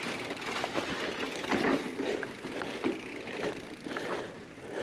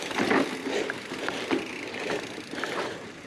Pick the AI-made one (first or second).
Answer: first